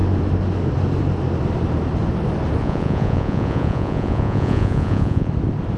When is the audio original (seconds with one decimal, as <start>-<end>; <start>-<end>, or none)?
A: 0.0-2.6; 5.3-5.8